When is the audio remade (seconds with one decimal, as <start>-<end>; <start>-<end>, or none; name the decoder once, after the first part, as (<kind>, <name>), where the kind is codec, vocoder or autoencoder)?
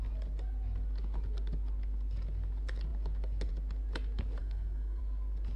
4.4-5.0 (codec, SNAC)